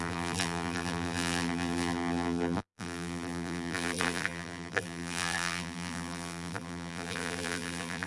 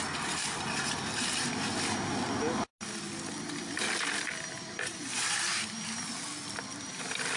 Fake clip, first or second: first